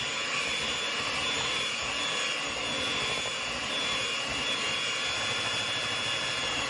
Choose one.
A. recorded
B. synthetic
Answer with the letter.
A